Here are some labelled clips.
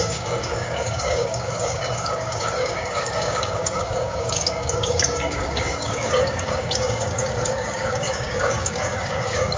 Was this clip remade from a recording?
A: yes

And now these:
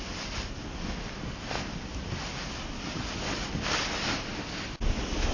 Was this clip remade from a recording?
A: no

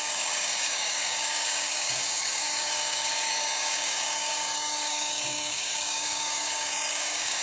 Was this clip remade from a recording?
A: yes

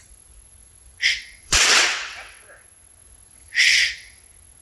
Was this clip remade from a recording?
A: yes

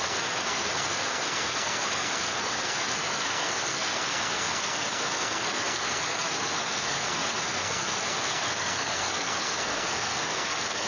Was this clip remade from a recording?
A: yes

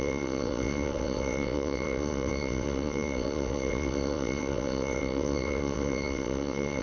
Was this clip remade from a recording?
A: yes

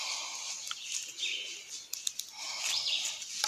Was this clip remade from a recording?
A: no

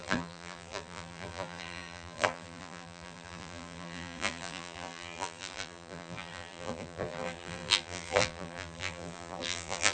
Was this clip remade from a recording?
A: yes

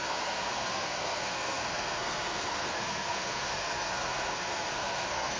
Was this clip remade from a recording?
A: yes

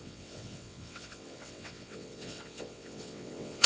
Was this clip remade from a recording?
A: yes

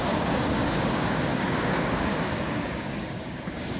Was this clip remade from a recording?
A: yes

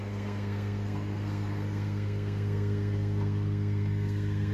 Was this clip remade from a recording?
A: yes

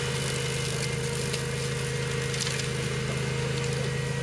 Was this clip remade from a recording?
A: no